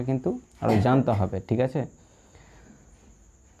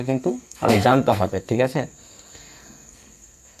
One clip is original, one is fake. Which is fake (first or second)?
second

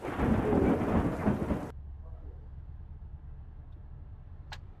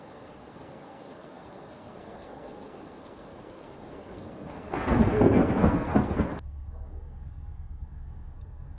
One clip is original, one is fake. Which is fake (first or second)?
second